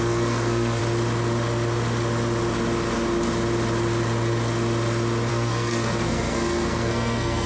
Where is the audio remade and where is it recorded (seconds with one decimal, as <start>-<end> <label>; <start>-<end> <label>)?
0.0-0.8 remade; 0.8-5.3 recorded; 5.3-7.5 remade